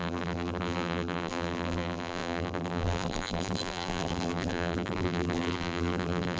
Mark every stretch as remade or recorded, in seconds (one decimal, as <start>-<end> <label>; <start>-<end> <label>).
0.0-6.4 remade